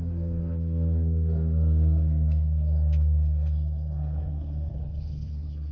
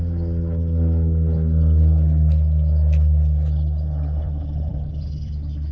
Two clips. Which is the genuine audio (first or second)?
second